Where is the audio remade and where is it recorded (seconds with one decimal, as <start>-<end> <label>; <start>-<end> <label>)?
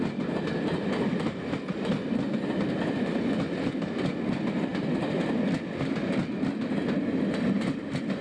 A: 0.0-8.2 recorded